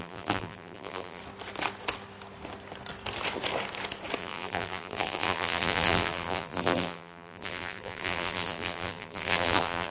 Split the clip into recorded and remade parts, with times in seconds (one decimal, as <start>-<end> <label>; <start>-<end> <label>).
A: 0.0-1.2 remade; 1.2-4.2 recorded; 4.2-9.9 remade